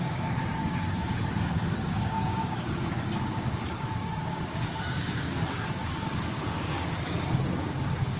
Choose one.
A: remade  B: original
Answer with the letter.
A